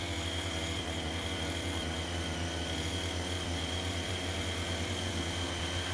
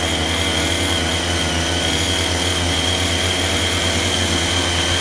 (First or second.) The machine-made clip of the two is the first